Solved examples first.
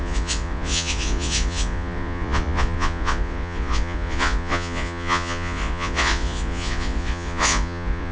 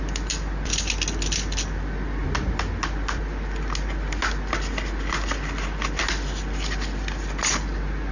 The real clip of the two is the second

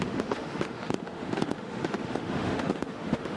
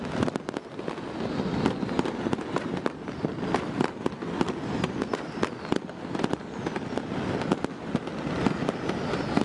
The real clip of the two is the second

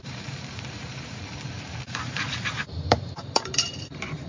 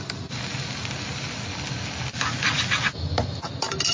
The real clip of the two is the second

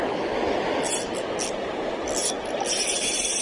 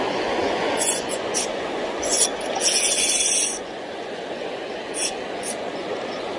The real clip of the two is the first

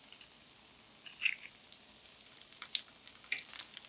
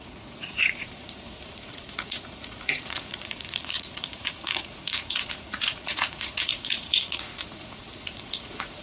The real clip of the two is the first